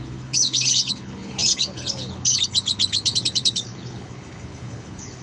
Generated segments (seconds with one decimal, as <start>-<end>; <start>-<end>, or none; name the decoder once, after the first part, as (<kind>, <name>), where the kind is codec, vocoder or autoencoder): 0.0-5.2 (codec, HILCodec)